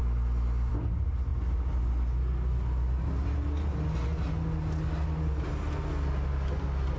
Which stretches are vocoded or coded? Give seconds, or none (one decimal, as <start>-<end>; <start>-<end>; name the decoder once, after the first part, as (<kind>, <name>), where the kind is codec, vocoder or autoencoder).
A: none

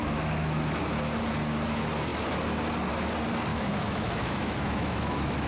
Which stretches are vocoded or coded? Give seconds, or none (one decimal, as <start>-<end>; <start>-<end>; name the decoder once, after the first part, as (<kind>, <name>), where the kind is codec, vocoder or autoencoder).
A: 0.0-0.8 (autoencoder, DAC-VAE); 3.5-5.5

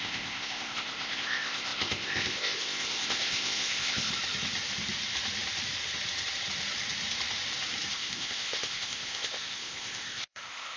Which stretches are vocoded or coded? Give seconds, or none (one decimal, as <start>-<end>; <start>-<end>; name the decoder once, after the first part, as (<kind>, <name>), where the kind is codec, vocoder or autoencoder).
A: 0.0-4.1 (codec, ZipCodec); 7.9-10.8

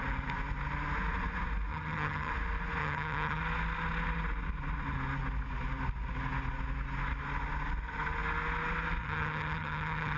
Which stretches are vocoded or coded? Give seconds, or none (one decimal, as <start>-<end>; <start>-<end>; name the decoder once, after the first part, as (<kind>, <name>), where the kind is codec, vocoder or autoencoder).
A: 1.7-2.3 (vocoder, HiFi-GAN); 2.8-3.4; 9.0-10.2